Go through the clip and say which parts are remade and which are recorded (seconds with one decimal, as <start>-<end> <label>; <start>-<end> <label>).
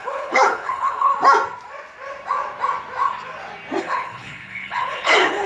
0.0-1.1 remade; 1.1-3.8 recorded; 3.8-5.5 remade